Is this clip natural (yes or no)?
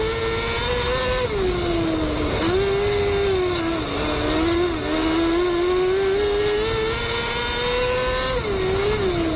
yes